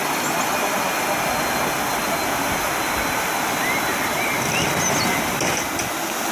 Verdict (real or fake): real